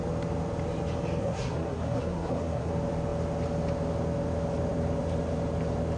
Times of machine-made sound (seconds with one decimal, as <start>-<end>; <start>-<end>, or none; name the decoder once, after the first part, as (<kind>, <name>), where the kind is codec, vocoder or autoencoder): 1.2-2.7 (codec, SNAC)